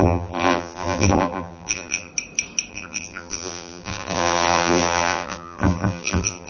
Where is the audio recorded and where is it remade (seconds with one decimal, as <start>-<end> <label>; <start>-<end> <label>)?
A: 0.0-2.1 remade; 2.1-2.7 recorded; 2.7-6.5 remade